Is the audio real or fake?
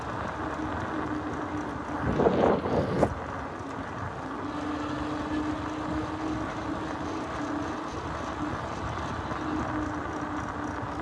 real